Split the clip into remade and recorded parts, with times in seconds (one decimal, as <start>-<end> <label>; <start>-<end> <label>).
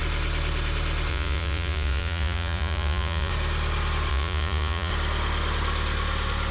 0.0-1.1 recorded; 1.1-3.3 remade; 3.3-4.1 recorded; 4.1-4.9 remade; 4.9-6.5 recorded